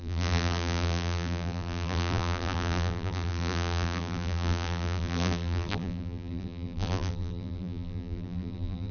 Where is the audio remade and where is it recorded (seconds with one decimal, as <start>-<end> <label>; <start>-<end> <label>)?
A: 0.0-8.9 remade